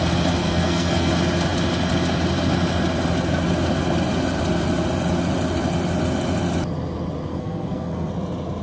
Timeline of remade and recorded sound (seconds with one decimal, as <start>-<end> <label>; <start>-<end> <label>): 0.0-0.4 recorded; 0.4-1.1 remade; 1.1-7.3 recorded; 7.3-8.1 remade; 8.1-8.6 recorded